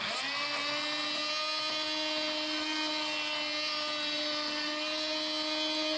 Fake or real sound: real